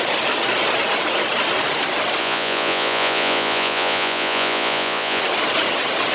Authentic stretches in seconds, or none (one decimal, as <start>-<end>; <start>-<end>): 0.0-2.2; 5.2-6.1